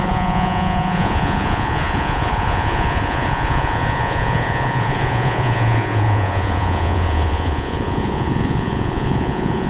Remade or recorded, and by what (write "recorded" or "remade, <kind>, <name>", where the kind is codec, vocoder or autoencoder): remade, vocoder, Vocos